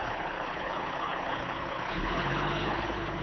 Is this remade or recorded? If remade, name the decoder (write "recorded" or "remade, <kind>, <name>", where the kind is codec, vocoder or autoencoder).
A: remade, codec, HILCodec